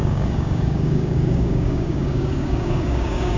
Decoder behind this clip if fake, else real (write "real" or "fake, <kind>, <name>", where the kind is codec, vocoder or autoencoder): fake, codec, DAC